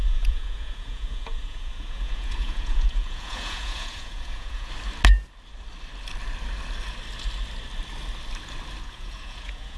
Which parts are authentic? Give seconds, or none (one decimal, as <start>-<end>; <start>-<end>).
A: 4.7-8.8